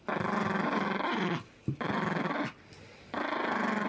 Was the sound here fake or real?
real